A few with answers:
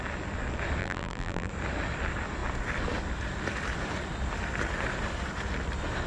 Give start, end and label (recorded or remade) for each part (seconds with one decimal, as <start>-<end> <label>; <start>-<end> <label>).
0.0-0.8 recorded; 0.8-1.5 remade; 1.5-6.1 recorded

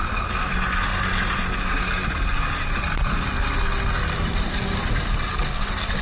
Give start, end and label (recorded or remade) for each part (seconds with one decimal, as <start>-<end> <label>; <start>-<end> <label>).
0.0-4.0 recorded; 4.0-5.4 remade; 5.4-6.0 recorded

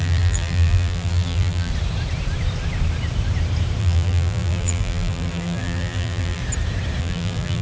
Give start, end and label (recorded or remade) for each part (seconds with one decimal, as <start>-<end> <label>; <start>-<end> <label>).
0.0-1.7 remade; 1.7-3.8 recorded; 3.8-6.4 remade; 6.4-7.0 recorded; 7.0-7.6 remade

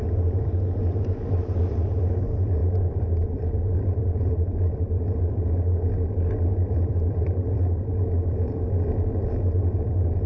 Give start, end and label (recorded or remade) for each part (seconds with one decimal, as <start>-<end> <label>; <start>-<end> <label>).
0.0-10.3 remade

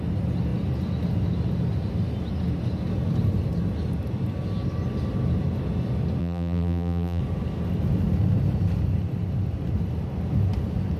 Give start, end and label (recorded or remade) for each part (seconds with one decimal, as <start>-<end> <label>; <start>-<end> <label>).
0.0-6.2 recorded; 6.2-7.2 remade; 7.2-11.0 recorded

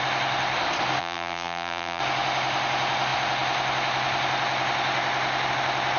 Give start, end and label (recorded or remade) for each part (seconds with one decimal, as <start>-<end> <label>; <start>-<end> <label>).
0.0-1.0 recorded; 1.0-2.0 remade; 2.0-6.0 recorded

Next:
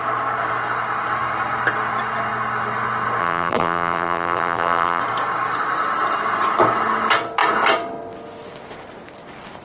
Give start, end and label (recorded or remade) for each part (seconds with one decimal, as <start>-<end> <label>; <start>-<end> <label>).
0.0-3.2 recorded; 3.2-5.0 remade; 5.0-9.6 recorded

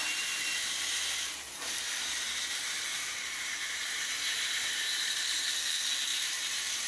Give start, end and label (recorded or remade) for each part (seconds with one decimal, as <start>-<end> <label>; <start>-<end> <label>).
0.0-2.9 recorded; 2.9-5.5 remade; 5.5-6.1 recorded; 6.1-6.9 remade